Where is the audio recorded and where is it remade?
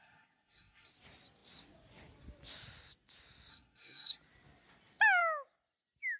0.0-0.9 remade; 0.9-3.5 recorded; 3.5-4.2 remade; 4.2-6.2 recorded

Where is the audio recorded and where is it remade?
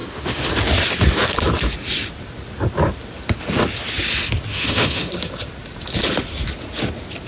0.0-0.5 remade; 0.5-4.5 recorded; 4.5-5.1 remade; 5.1-7.3 recorded